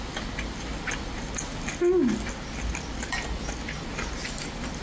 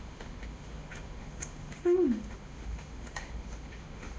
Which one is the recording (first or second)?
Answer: first